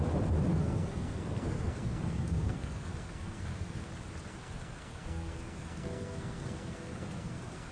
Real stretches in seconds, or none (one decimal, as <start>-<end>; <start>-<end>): 0.0-0.5; 3.9-4.3